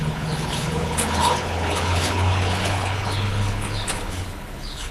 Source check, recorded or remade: remade